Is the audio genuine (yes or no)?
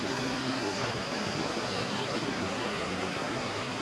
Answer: no